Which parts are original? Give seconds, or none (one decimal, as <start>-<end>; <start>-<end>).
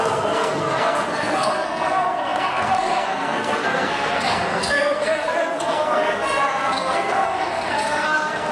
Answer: none